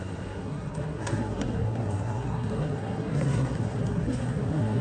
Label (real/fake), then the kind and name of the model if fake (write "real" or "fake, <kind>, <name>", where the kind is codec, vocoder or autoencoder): fake, codec, SNAC